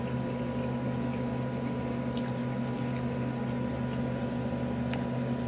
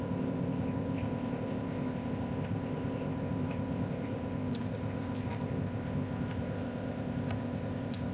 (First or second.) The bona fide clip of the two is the first